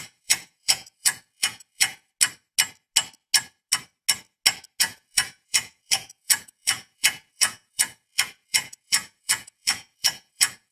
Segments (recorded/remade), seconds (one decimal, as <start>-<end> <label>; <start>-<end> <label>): 0.0-2.1 remade; 2.1-4.8 recorded; 4.8-10.7 remade